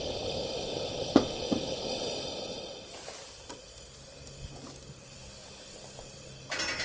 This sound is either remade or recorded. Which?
recorded